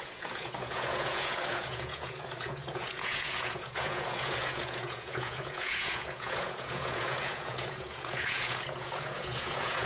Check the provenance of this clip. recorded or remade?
remade